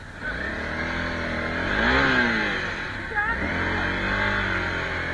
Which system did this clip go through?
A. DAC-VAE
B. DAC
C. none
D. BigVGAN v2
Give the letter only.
C